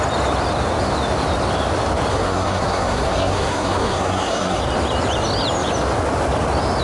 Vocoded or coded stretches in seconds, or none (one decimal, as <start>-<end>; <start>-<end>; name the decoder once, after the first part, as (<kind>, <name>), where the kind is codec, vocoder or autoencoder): 2.1-4.6 (codec, SNAC)